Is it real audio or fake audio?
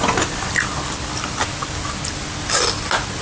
real